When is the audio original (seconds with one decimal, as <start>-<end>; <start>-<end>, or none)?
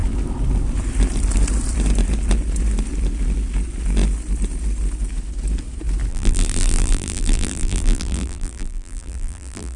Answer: 0.0-6.1